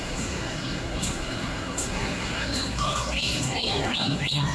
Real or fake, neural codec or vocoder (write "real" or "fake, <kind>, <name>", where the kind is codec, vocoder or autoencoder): fake, codec, SNAC